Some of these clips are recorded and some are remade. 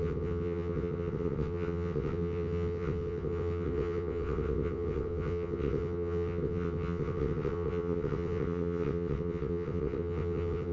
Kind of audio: remade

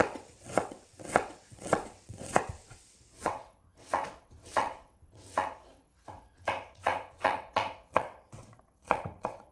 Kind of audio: remade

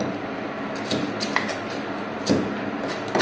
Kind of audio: recorded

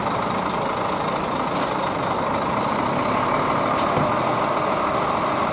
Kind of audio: recorded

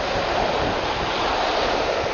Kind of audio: recorded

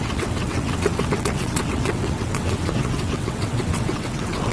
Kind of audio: remade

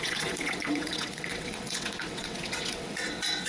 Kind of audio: remade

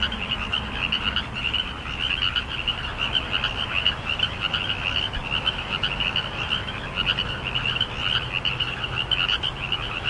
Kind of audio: recorded